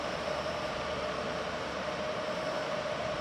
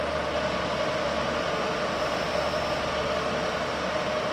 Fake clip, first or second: first